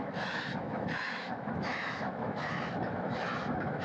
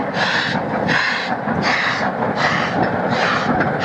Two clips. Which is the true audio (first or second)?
second